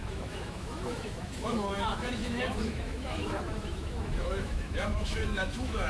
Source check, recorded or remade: remade